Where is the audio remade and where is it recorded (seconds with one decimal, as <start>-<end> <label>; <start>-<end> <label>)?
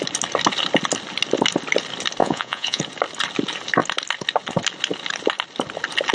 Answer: 0.0-2.2 recorded; 2.2-2.8 remade; 2.8-6.1 recorded